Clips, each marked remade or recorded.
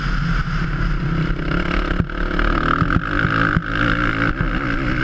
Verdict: recorded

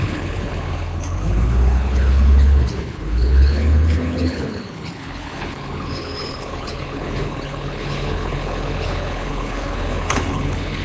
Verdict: remade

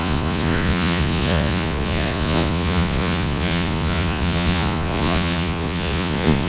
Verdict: remade